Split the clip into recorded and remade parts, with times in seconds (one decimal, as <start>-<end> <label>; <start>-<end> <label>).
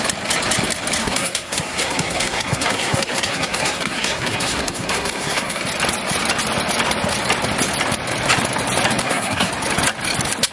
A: 0.0-1.0 recorded; 1.0-5.6 remade; 5.6-9.0 recorded; 9.0-9.5 remade; 9.5-10.5 recorded